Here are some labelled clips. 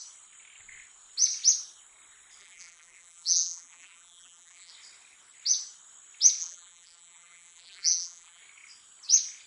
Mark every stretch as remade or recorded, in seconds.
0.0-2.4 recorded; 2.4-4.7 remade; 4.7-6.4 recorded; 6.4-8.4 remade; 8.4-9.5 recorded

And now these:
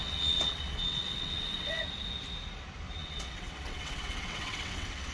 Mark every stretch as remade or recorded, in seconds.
0.0-1.8 remade; 1.8-3.0 recorded; 3.0-5.1 remade

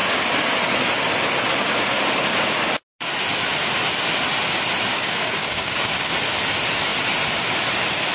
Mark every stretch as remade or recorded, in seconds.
0.0-4.9 recorded; 4.9-6.1 remade; 6.1-8.1 recorded

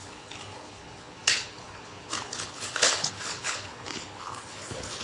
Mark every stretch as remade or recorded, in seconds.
0.0-5.0 remade

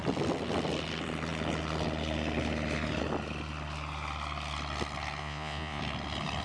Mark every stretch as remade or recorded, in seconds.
0.0-5.2 recorded; 5.2-5.8 remade; 5.8-6.4 recorded

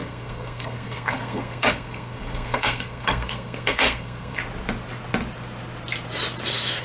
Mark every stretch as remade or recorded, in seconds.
0.0-4.4 remade; 4.4-6.8 recorded

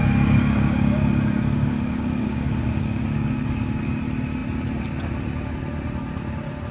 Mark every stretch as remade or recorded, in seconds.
0.0-3.8 remade; 3.8-6.7 recorded

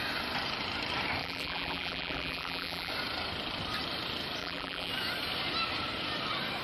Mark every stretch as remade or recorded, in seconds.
0.0-1.2 recorded; 1.2-2.9 remade; 2.9-4.4 recorded; 4.4-4.9 remade; 4.9-6.6 recorded